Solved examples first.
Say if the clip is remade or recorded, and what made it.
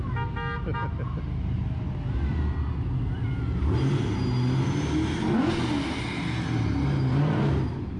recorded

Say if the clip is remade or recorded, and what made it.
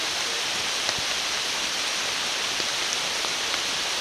recorded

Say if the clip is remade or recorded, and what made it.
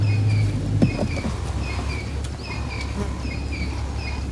recorded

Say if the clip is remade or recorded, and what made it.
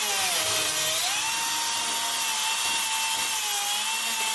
recorded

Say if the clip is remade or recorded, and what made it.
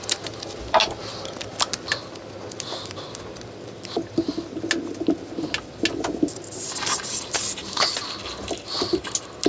recorded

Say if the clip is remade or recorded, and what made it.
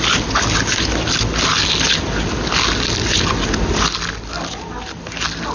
recorded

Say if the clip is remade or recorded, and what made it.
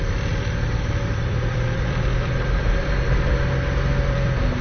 remade, vocoder, BigVGAN v2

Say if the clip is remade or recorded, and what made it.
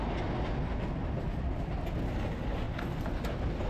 recorded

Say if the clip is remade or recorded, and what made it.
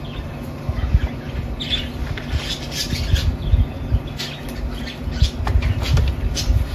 recorded